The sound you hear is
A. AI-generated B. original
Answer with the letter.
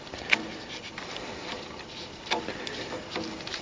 B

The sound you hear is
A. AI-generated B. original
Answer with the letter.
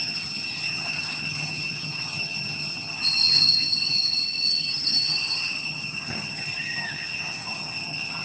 A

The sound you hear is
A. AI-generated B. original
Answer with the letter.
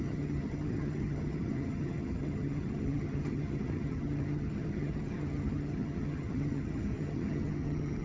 A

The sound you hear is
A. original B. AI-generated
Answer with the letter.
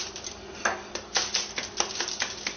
A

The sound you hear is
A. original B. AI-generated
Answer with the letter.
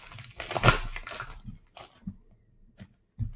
A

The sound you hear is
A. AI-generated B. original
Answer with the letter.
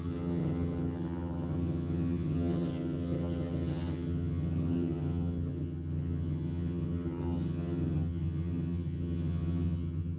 A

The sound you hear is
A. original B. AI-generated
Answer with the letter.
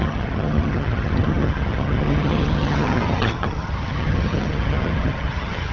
B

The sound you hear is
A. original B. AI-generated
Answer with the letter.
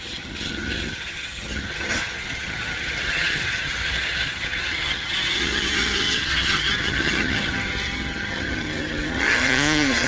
B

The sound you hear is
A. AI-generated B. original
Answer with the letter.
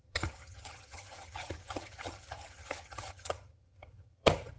A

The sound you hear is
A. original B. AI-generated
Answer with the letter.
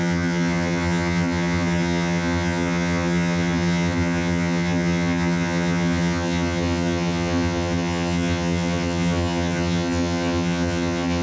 B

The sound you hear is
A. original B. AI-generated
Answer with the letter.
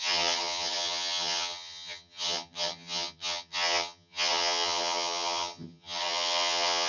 B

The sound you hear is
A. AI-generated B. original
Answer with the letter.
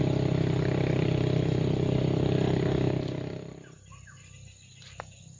B